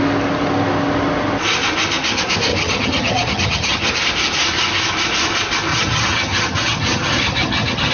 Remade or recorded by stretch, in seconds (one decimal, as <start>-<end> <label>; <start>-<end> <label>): 0.0-2.5 recorded; 2.5-3.9 remade; 3.9-5.7 recorded; 5.7-7.9 remade